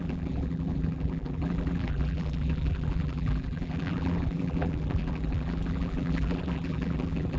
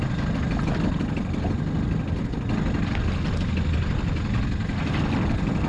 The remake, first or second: first